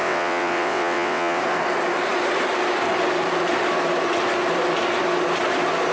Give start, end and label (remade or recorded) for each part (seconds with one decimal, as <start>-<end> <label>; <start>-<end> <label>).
0.0-1.4 remade; 1.4-5.9 recorded